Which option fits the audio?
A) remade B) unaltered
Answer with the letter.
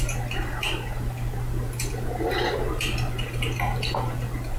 B